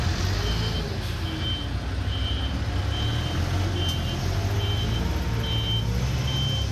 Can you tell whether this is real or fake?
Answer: real